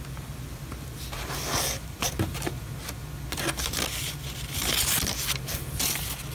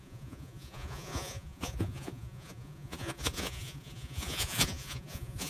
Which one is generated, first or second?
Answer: second